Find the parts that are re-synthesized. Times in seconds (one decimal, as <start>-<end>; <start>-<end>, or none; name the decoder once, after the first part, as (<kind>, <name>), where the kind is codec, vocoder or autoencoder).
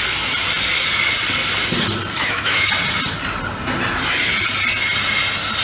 2.2-2.7 (autoencoder, DAC-VAE)